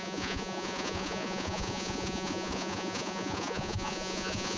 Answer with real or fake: fake